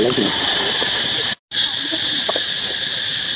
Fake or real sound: real